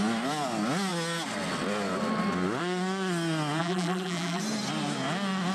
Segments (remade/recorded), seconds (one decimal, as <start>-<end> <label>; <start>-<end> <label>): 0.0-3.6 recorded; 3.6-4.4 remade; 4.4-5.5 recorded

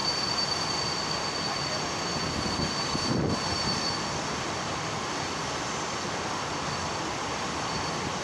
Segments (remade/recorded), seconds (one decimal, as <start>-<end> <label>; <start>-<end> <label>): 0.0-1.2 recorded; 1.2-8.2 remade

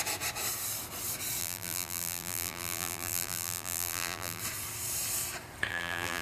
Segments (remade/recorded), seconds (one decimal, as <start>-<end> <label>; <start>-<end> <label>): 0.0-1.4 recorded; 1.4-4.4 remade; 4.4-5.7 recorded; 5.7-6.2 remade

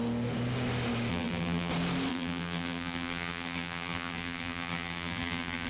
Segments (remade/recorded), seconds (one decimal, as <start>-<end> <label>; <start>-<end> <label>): 0.0-1.1 recorded; 1.1-1.7 remade; 1.7-2.1 recorded; 2.1-5.7 remade

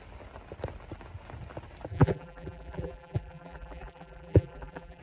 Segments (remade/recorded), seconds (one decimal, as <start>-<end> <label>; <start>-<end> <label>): 0.0-1.9 recorded; 1.9-5.0 remade